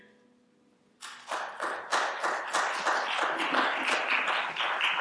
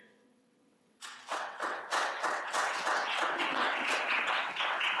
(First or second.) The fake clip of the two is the second